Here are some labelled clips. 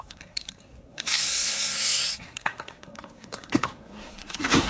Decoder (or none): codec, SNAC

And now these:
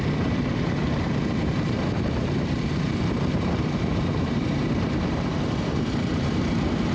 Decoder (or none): vocoder, BigVGAN v2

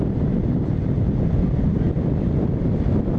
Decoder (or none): none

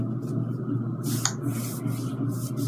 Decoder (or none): none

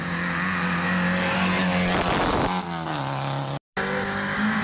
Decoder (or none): none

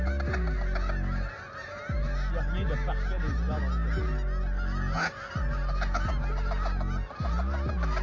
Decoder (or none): none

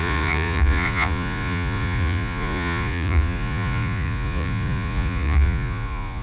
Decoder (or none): vocoder, Vocos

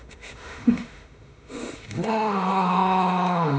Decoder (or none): autoencoder, DAC-VAE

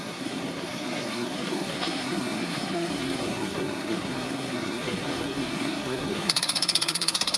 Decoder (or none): codec, SNAC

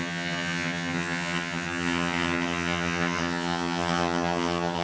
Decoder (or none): vocoder, HiFi-GAN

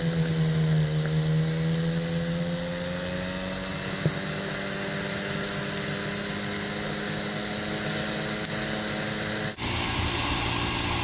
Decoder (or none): none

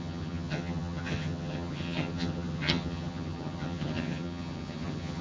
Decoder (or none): vocoder, HiFi-GAN